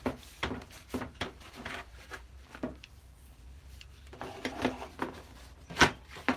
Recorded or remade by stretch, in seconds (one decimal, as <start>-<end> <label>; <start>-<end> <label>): 0.0-0.4 recorded; 0.4-4.2 remade; 4.2-6.4 recorded